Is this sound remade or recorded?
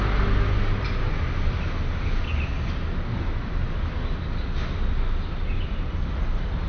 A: recorded